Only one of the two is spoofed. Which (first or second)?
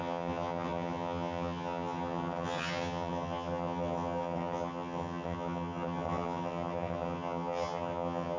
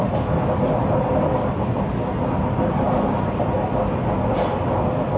first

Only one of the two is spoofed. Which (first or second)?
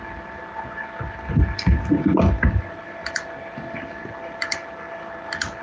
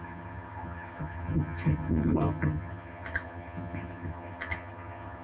second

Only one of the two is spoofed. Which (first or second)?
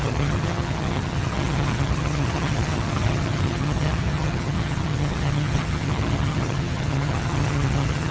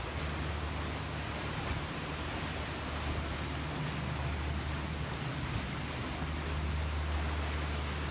first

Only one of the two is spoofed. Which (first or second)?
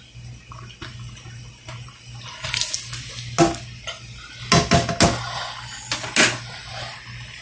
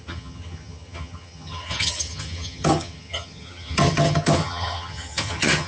second